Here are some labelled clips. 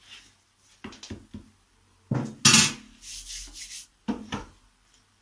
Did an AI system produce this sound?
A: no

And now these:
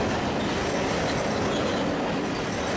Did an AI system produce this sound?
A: no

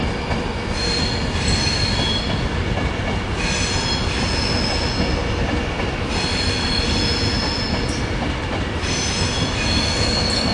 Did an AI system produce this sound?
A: no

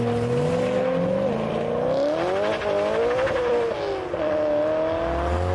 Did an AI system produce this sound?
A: no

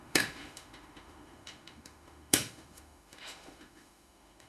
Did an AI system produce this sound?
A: yes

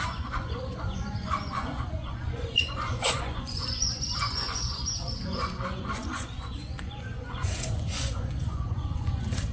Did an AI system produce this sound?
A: yes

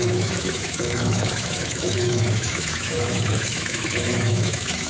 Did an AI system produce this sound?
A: yes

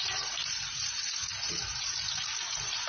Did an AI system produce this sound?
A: yes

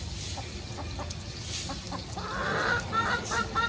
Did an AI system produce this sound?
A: no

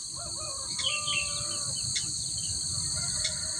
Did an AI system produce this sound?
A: no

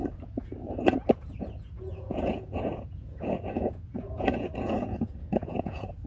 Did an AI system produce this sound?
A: yes